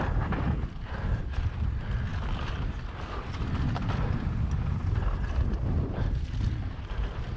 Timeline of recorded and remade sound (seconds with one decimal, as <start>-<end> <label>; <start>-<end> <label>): 0.0-7.4 recorded